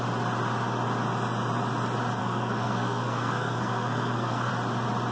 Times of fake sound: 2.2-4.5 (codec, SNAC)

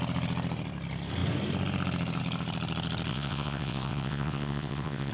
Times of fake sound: 3.1-5.1 (vocoder, WaveNeXt)